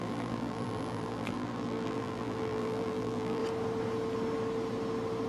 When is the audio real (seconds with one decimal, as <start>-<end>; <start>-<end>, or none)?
3.4-5.3